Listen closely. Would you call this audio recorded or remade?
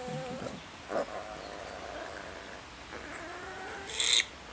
recorded